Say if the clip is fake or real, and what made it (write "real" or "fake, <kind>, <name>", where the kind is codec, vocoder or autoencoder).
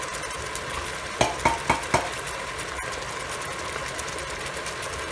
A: real